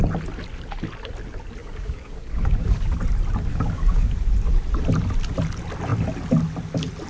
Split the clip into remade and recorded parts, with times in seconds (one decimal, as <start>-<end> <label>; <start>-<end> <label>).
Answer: 0.0-1.6 recorded; 1.6-3.0 remade; 3.0-3.5 recorded; 3.5-4.1 remade; 4.1-7.1 recorded

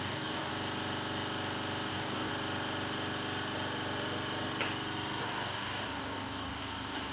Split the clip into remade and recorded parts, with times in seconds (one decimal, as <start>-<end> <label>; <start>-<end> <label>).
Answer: 0.0-0.5 remade; 0.5-1.9 recorded; 1.9-2.3 remade; 2.3-5.2 recorded; 5.2-7.1 remade

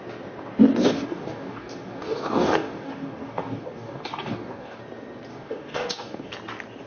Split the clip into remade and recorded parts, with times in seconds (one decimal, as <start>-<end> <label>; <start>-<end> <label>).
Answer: 0.0-0.8 recorded; 0.8-4.8 remade; 4.8-5.3 recorded; 5.3-6.3 remade; 6.3-6.9 recorded